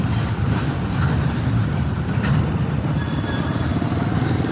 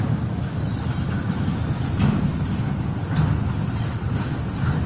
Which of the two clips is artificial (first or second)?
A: first